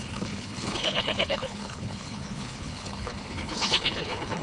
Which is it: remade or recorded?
remade